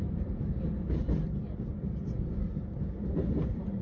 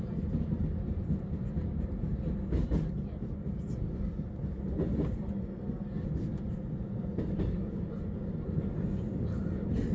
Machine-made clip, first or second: first